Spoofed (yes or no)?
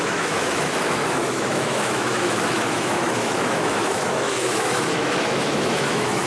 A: yes